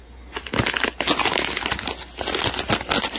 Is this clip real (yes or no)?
yes